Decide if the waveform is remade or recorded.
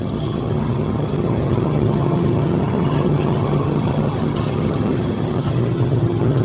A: remade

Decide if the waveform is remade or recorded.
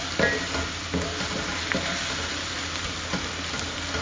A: recorded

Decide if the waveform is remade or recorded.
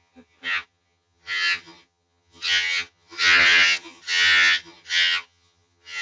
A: remade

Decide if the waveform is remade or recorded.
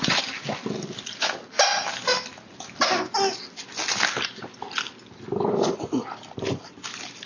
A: recorded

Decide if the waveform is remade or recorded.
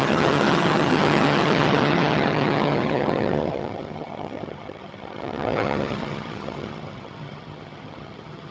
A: remade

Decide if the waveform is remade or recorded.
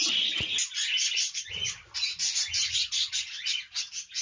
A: recorded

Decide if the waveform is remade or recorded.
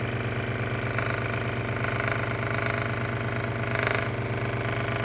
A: recorded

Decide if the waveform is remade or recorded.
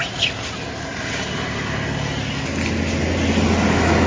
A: recorded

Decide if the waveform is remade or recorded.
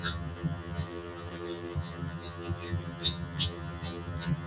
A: remade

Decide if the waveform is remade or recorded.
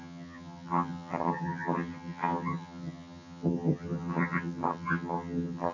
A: remade